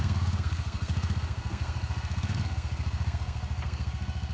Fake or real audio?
fake